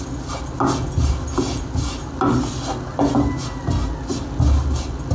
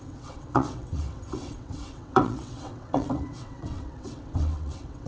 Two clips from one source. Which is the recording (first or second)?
first